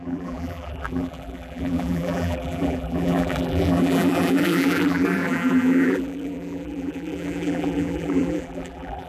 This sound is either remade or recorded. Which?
remade